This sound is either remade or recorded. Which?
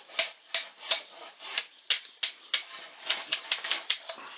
recorded